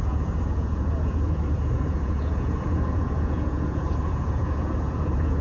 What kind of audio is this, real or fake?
fake